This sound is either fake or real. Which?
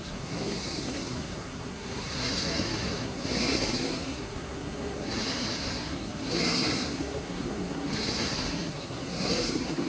fake